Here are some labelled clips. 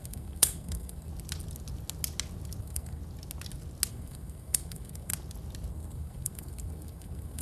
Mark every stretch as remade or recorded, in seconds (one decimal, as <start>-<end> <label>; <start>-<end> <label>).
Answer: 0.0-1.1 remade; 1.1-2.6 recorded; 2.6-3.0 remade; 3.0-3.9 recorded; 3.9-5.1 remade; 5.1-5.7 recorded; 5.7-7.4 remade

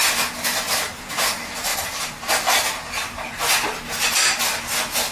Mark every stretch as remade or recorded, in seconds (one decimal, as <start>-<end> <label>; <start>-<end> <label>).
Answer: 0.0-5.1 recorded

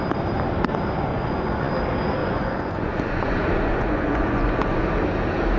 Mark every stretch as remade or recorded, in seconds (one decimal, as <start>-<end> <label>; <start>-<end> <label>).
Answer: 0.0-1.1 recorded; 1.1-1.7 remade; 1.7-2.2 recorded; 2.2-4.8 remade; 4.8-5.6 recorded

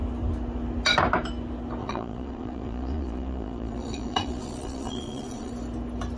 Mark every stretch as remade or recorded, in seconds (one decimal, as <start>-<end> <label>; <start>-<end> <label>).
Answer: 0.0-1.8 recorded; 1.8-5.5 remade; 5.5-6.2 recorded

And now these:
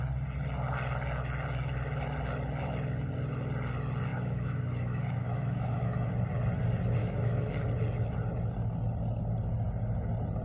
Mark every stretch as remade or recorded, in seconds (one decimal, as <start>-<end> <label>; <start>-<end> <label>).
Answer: 0.0-4.1 recorded; 4.1-6.1 remade; 6.1-7.0 recorded; 7.0-7.5 remade; 7.5-10.4 recorded

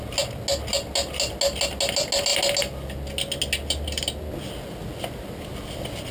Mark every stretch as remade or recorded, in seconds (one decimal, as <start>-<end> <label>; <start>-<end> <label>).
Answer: 0.0-6.1 recorded

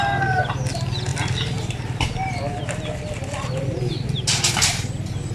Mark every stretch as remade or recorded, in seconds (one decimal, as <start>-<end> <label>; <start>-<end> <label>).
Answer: 0.0-5.3 recorded